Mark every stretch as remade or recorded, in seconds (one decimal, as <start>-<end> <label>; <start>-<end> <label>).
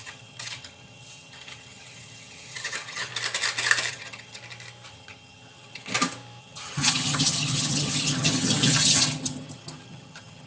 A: 0.0-3.1 remade; 3.1-3.9 recorded; 3.9-4.4 remade; 4.4-4.9 recorded; 4.9-5.9 remade; 5.9-6.4 recorded; 6.4-10.5 remade